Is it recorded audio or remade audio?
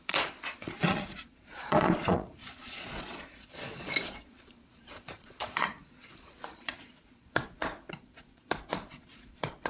remade